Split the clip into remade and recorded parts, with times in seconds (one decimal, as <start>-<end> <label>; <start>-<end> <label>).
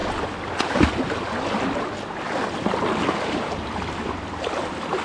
0.0-5.0 recorded